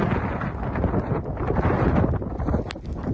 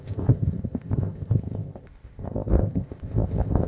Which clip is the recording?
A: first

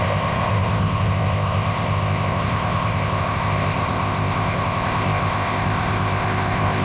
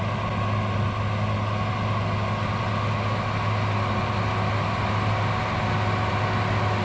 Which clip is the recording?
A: second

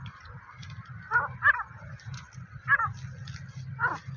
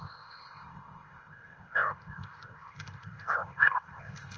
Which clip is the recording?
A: first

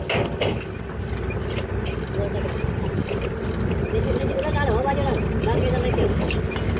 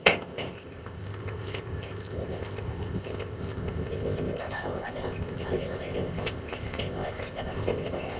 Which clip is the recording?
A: first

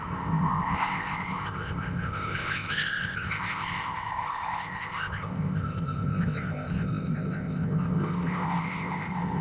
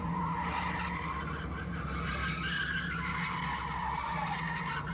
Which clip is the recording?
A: second